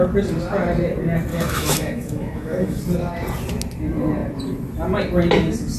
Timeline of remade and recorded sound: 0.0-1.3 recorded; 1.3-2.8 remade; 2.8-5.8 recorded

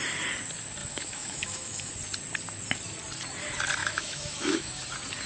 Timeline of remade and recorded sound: 0.0-0.8 recorded; 0.8-1.9 remade; 1.9-3.8 recorded; 3.8-4.8 remade; 4.8-5.3 recorded

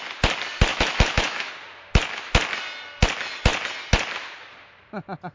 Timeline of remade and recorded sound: 0.0-0.7 recorded; 0.7-1.5 remade; 1.5-5.3 recorded

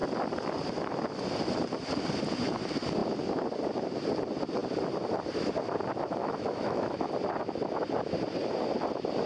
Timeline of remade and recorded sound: 0.0-6.2 recorded; 6.2-7.1 remade; 7.1-9.3 recorded

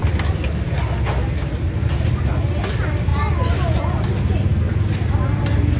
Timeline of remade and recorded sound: 0.0-5.8 recorded

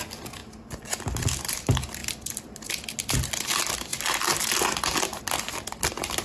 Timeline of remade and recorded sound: 0.0-6.2 recorded

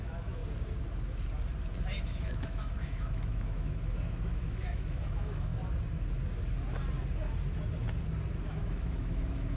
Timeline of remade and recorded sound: 0.0-0.4 remade; 0.4-2.0 recorded; 2.0-5.5 remade; 5.5-8.4 recorded; 8.4-9.6 remade

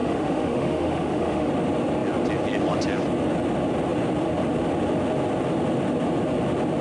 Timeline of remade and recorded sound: 0.0-1.5 remade; 1.5-6.8 recorded